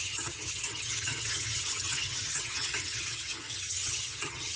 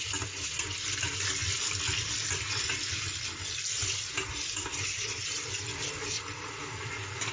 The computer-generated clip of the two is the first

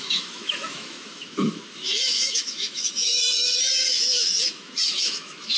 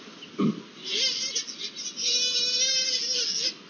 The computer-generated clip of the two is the first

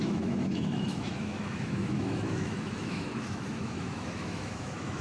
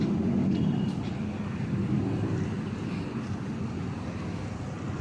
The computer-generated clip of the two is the first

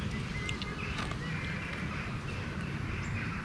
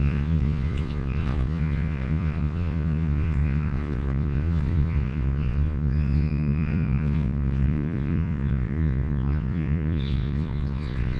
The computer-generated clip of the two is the second